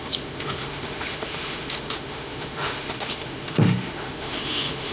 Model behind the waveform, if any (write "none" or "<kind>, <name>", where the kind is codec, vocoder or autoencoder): autoencoder, DAC-VAE